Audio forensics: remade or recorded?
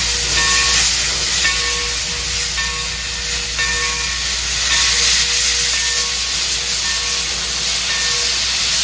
recorded